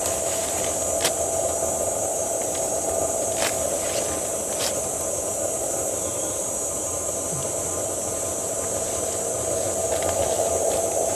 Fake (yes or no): no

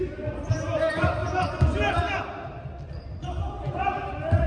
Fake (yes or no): no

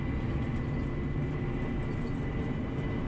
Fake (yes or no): no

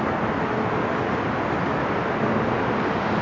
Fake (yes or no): no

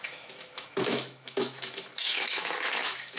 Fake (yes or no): yes